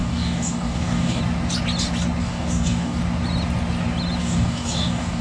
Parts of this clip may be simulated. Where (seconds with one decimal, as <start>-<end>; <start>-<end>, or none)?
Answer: 0.0-1.2; 2.2-3.0; 4.2-5.2